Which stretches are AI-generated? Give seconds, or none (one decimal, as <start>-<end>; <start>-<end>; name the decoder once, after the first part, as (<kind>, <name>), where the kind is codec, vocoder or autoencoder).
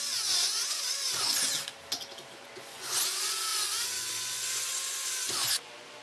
0.0-1.3 (vocoder, Vocos); 2.3-6.0